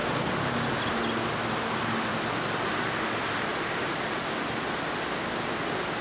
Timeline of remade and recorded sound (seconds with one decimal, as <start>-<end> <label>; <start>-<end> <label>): 0.0-2.1 recorded; 2.1-3.0 remade; 3.0-3.5 recorded; 3.5-4.2 remade; 4.2-6.0 recorded